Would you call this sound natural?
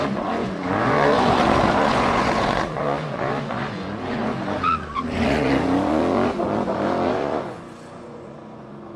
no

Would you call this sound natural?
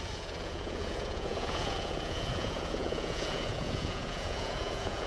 no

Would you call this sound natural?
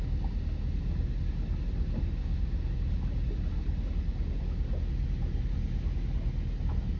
yes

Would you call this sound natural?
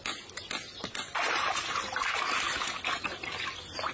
yes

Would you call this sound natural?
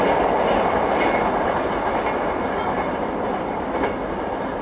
yes